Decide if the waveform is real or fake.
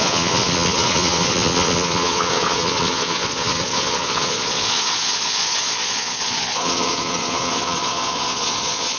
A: fake